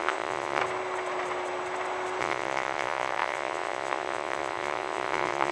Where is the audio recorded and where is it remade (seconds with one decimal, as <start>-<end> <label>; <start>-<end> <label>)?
0.0-0.6 remade; 0.6-2.2 recorded; 2.2-5.5 remade